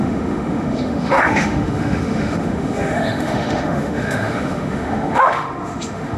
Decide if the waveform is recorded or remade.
remade